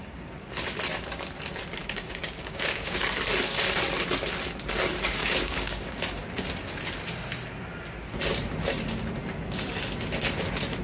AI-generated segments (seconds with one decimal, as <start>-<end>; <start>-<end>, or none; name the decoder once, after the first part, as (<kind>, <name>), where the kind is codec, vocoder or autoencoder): 1.8-3.0 (codec, DAC); 5.2-6.0